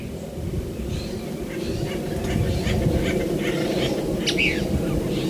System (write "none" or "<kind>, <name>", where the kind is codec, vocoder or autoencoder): none